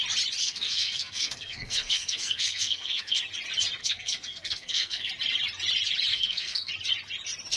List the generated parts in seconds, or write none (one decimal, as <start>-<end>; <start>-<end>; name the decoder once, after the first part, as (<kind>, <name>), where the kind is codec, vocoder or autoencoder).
0.4-3.2 (codec, SNAC); 3.8-5.1; 6.1-6.7